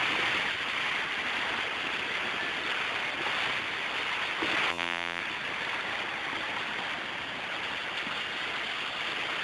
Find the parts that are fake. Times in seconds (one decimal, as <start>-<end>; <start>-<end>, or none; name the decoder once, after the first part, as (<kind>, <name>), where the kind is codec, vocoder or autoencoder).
4.7-5.2 (vocoder, BigVGAN v2)